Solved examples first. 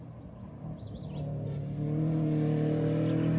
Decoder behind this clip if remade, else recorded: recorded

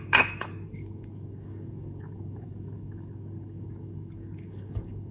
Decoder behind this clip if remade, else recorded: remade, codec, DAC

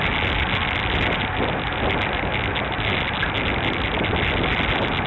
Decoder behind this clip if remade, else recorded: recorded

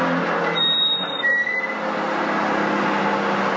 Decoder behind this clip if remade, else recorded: recorded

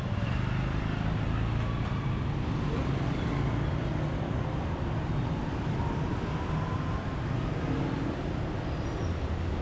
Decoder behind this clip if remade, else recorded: recorded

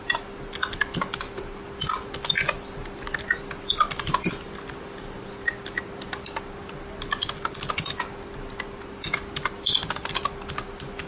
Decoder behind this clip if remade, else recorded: recorded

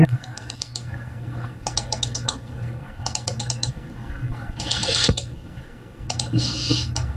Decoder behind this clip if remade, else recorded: remade, codec, SNAC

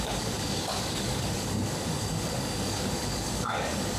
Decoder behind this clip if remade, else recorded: remade, codec, DAC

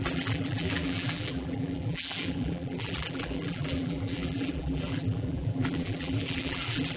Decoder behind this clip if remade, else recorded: remade, vocoder, BigVGAN v2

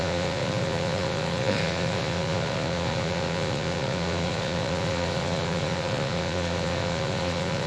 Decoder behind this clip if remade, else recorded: remade, vocoder, Vocos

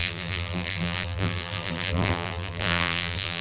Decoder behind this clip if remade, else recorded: remade, vocoder, BigVGAN v2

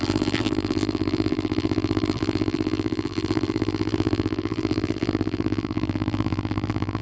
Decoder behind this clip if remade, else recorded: remade, vocoder, BigVGAN v2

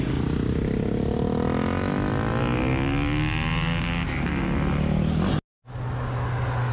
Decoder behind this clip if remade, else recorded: recorded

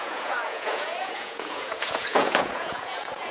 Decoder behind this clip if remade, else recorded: remade, vocoder, Vocos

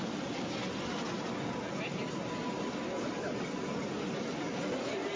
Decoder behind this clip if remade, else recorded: recorded